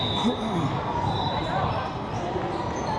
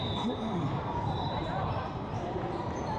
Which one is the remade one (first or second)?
second